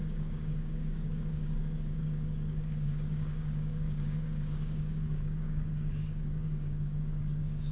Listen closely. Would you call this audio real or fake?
fake